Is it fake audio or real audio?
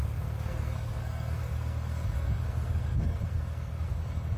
fake